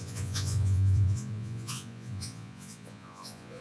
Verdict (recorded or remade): remade